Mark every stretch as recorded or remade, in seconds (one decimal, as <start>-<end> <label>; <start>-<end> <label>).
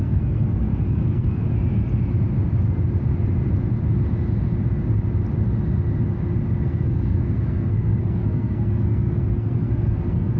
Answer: 0.0-1.4 remade; 1.4-6.6 recorded; 6.6-10.4 remade